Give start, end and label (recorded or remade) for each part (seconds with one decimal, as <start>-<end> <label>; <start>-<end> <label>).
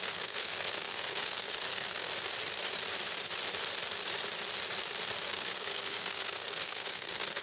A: 0.0-2.1 remade; 2.1-5.3 recorded; 5.3-7.4 remade